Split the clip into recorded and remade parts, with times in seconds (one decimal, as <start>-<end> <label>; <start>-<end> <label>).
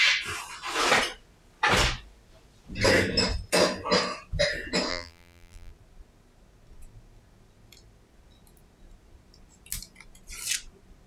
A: 0.0-4.9 recorded; 4.9-5.7 remade; 5.7-11.1 recorded